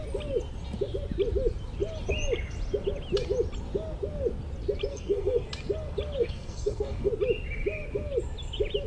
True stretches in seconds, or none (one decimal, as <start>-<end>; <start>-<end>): 0.0-4.9; 5.5-6.2; 7.1-8.9